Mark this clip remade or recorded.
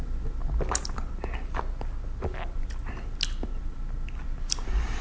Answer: recorded